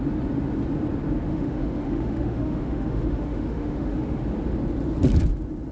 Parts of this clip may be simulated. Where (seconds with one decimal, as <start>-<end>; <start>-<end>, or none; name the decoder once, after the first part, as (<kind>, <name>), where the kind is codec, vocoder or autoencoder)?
1.3-4.2 (autoencoder, DAC-VAE)